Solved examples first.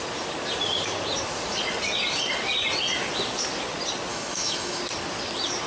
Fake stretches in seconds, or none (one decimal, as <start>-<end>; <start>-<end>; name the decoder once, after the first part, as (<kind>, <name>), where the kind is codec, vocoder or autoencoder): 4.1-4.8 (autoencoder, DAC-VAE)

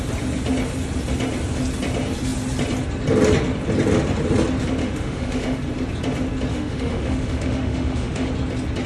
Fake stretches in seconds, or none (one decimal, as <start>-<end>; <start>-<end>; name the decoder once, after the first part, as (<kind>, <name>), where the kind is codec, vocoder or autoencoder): 4.8-5.6 (autoencoder, DAC-VAE); 6.5-8.3

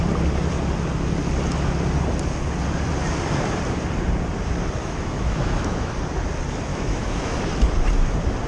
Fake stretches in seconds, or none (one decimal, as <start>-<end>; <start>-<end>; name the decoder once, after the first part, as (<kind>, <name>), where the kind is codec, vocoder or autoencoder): 4.8-5.9 (autoencoder, DAC-VAE); 6.7-7.3

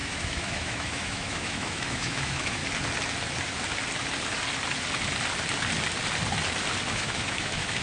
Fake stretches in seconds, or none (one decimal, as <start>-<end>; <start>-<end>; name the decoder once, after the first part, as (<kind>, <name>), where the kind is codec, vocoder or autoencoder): 0.0-2.6 (autoencoder, DAC-VAE); 6.9-7.8